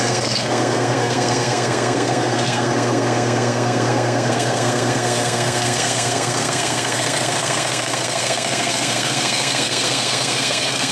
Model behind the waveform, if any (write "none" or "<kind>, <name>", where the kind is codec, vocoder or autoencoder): codec, SNAC